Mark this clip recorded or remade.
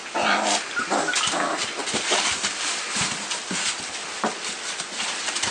recorded